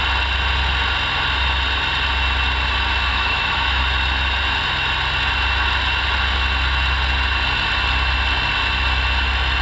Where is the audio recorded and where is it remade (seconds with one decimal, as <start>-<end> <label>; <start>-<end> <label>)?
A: 0.0-3.1 recorded; 3.1-3.8 remade; 3.8-9.6 recorded